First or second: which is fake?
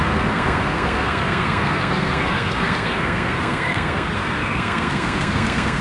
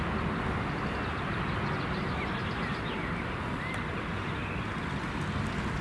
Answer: first